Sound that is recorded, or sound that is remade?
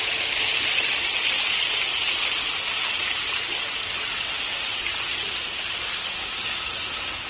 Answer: recorded